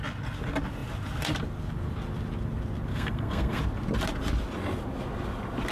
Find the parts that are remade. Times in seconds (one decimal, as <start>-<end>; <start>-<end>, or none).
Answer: 2.9-3.6